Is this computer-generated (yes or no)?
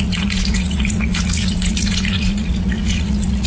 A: yes